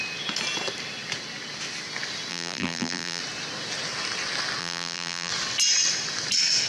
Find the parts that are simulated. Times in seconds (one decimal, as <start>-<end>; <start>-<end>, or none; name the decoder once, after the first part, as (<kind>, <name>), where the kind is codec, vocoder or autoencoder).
2.3-3.2 (vocoder, BigVGAN v2); 4.6-5.3